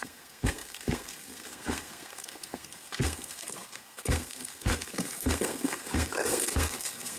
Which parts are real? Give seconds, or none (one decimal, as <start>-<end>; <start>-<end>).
none